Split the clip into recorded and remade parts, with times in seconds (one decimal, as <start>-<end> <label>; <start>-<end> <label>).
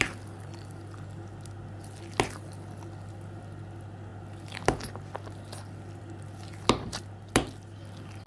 0.0-8.3 recorded